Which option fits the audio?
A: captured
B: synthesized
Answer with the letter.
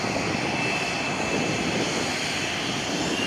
A